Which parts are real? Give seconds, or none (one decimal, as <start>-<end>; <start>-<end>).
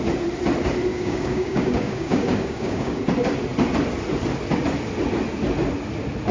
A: 0.0-0.9; 3.0-6.3